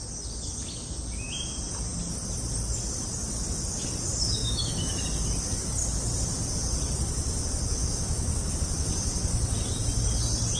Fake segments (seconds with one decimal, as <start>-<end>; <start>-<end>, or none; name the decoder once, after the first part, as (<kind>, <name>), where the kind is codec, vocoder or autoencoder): 4.4-5.0 (autoencoder, DAC-VAE); 7.8-8.6